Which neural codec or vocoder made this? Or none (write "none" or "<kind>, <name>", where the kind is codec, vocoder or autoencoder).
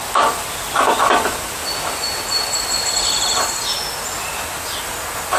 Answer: none